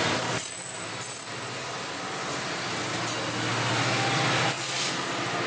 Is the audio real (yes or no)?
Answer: yes